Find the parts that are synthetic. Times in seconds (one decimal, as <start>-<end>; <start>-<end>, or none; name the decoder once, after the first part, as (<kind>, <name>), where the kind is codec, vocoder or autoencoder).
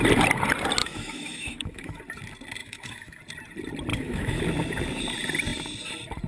0.8-2.0 (autoencoder, DAC-VAE); 2.6-3.2; 3.9-4.4